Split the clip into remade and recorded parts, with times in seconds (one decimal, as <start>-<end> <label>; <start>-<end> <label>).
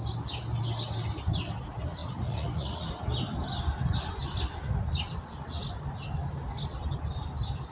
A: 0.0-2.0 recorded; 2.0-2.9 remade; 2.9-7.7 recorded